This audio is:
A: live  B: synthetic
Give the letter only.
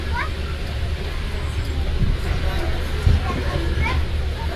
A